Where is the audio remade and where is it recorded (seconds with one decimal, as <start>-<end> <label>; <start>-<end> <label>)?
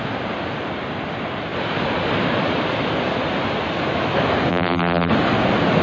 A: 0.0-4.5 recorded; 4.5-5.1 remade; 5.1-5.8 recorded